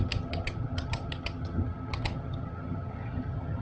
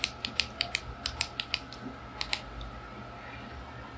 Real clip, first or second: second